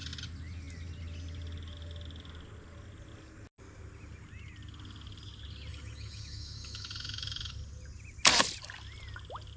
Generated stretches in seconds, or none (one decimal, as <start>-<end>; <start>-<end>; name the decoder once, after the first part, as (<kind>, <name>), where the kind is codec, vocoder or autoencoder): 5.7-7.5 (autoencoder, DAC-VAE)